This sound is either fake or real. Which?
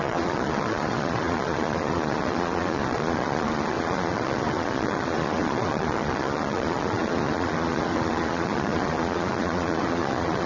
fake